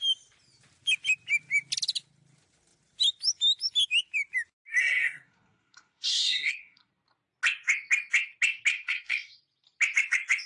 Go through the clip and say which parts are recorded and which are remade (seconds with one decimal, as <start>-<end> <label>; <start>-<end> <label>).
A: 0.0-4.8 recorded; 4.8-6.9 remade; 6.9-8.7 recorded; 8.7-9.4 remade; 9.4-10.5 recorded